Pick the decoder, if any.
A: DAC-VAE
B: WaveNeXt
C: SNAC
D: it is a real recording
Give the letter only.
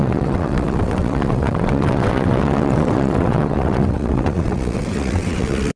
B